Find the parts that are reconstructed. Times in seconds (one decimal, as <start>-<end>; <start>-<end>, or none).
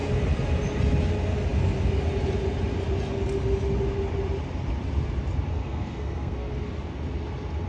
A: 5.5-6.5